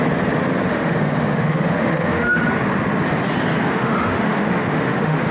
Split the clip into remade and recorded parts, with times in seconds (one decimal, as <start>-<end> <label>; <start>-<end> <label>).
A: 0.0-0.7 recorded; 0.7-2.4 remade; 2.4-3.7 recorded; 3.7-5.3 remade